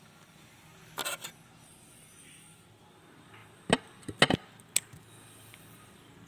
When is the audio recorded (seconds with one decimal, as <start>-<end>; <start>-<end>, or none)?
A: 0.0-6.3